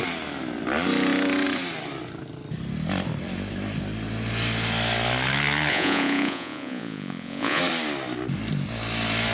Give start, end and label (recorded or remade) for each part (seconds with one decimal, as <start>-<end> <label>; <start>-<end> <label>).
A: 0.0-5.7 recorded; 5.7-7.6 remade; 7.6-9.3 recorded